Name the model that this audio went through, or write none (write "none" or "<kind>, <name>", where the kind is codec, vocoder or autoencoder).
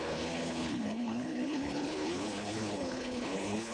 codec, HILCodec